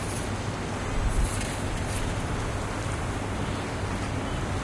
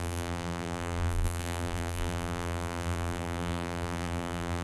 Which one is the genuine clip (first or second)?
first